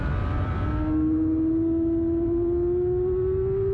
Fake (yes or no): no